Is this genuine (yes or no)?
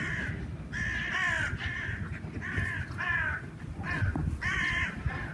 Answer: yes